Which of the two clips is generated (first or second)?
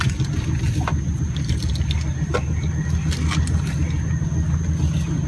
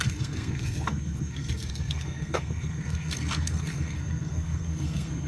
second